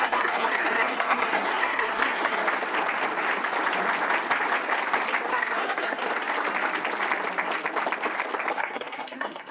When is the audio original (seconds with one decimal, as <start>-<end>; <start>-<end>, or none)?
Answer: 2.4-5.3; 6.0-8.5